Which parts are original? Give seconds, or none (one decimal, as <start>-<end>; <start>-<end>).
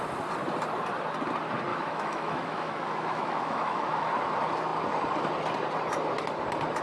0.0-1.7; 4.1-6.8